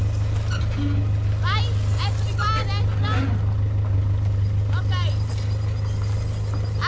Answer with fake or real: real